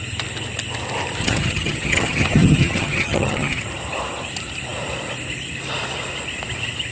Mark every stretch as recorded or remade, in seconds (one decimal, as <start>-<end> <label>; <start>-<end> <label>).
0.0-1.2 recorded; 1.2-3.6 remade; 3.6-6.9 recorded

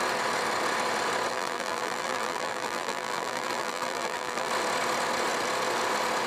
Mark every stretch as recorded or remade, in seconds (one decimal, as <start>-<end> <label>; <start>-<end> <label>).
0.0-1.3 recorded; 1.3-4.5 remade; 4.5-6.3 recorded

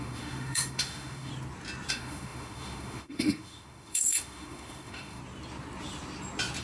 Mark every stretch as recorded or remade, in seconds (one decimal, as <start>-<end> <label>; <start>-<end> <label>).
0.0-1.3 remade; 1.3-1.9 recorded; 1.9-5.2 remade; 5.2-6.6 recorded

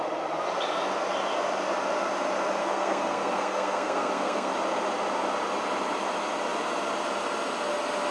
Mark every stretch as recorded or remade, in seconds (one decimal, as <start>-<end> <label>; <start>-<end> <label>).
0.0-2.6 recorded; 2.6-4.5 remade; 4.5-8.1 recorded

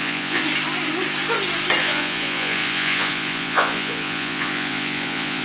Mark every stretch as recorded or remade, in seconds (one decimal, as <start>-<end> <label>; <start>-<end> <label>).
0.0-0.4 remade; 0.4-1.8 recorded; 1.8-5.4 remade

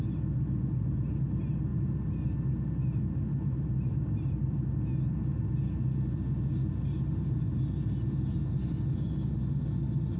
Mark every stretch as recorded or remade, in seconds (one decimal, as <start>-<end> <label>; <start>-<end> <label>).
0.0-10.2 recorded

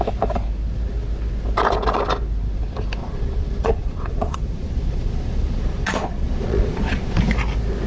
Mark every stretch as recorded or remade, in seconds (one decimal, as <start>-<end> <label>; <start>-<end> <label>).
0.0-3.0 recorded; 3.0-7.2 remade; 7.2-7.9 recorded